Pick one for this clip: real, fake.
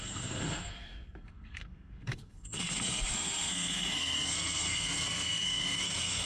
fake